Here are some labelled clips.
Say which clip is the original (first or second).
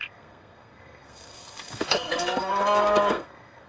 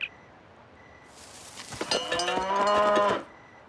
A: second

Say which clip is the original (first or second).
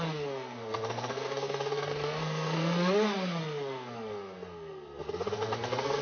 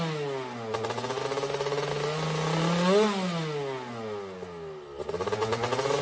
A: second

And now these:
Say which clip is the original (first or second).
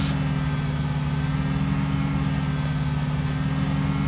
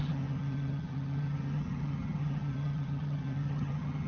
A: first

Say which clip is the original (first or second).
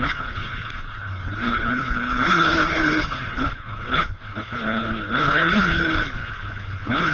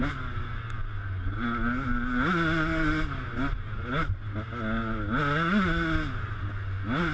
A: second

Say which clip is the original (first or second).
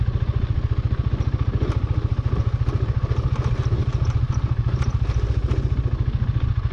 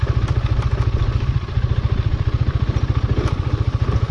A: first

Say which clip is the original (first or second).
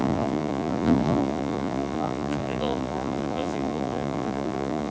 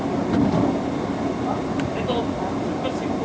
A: second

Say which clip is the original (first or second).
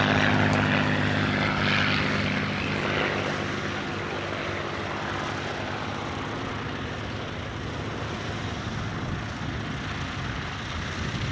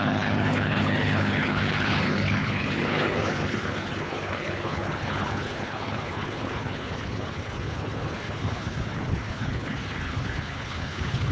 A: first